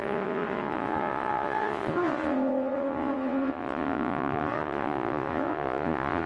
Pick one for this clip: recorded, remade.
remade